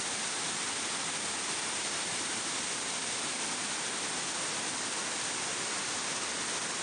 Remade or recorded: recorded